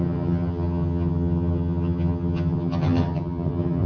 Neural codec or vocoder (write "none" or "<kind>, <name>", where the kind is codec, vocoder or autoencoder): vocoder, HiFi-GAN